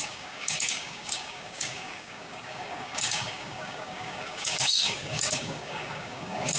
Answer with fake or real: fake